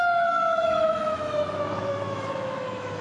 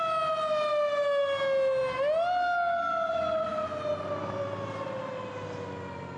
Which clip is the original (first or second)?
second